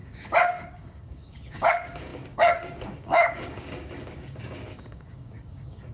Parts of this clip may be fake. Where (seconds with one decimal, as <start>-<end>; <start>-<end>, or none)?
0.0-5.9